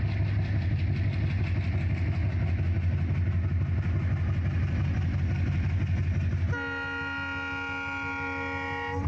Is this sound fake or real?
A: real